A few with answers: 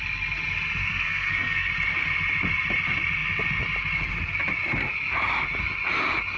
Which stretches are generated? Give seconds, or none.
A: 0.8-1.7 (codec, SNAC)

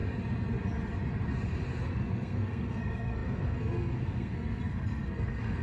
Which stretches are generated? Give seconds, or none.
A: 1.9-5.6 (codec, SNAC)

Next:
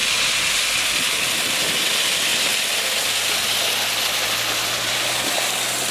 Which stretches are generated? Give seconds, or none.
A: none